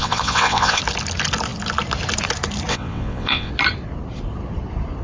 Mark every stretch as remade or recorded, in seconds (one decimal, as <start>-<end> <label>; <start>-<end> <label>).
0.0-0.8 remade; 0.8-2.7 recorded; 2.7-3.5 remade; 3.5-5.0 recorded